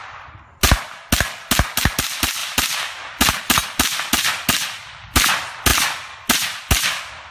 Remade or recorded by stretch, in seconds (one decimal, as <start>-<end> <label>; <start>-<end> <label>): 0.0-7.3 recorded